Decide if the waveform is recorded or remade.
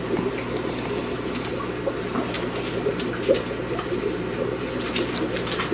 recorded